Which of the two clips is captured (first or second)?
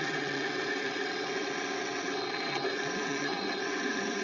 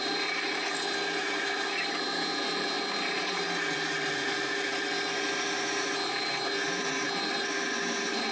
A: second